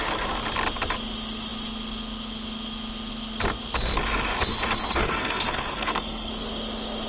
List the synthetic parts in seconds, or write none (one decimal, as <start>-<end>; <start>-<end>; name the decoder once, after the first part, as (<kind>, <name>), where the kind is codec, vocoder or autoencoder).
5.0-6.3 (codec, SNAC)